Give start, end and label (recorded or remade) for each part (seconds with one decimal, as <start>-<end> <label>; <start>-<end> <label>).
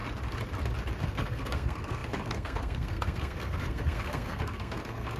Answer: 0.0-1.0 recorded; 1.0-5.2 remade